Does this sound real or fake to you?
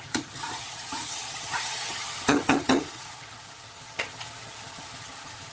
fake